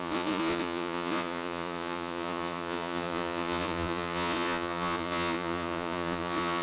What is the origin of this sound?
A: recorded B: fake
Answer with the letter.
B